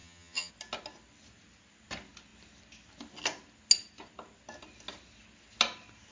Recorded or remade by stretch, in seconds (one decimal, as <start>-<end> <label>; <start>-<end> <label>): 0.0-0.5 remade; 0.5-6.1 recorded